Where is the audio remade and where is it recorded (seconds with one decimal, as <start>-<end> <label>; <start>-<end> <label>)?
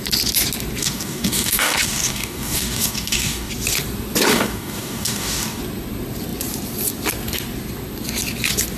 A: 0.0-0.8 recorded; 0.8-3.5 remade; 3.5-4.3 recorded; 4.3-5.6 remade; 5.6-8.8 recorded